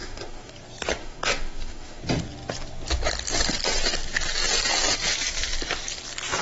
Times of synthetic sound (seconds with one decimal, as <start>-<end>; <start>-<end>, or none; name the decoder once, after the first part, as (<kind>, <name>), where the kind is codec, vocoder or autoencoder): 0.0-0.5 (autoencoder, DAC-VAE); 1.0-2.0